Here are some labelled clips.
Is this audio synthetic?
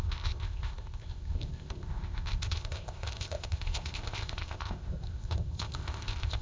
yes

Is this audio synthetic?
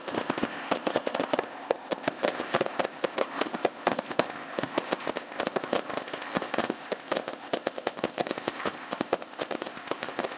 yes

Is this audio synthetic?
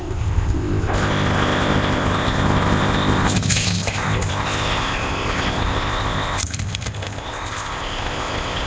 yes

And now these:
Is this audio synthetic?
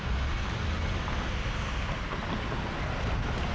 no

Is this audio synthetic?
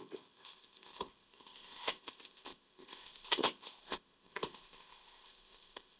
yes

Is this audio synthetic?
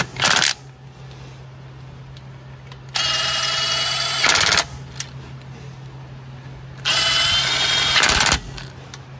no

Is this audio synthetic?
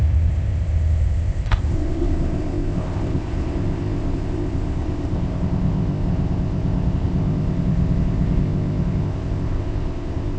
yes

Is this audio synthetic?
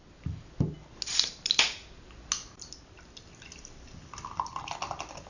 no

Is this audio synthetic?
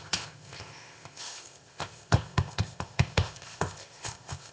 yes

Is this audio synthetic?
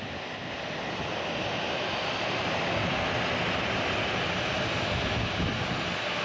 no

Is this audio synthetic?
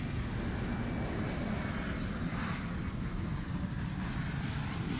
no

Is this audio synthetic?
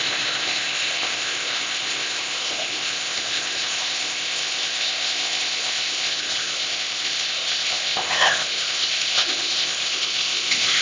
yes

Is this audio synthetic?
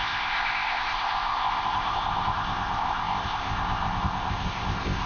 yes